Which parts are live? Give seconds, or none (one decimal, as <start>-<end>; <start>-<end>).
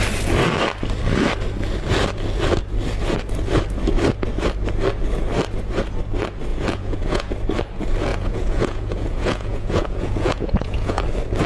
0.0-6.5; 7.3-8.1; 11.0-11.5